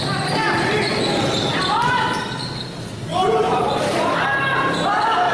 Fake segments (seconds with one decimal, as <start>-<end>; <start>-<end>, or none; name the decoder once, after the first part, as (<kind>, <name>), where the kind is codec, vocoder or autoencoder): 3.1-3.8 (vocoder, BigVGAN v2)